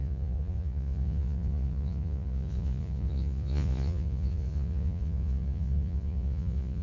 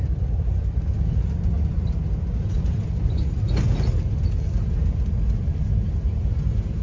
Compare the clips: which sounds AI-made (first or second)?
first